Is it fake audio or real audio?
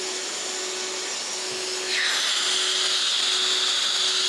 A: real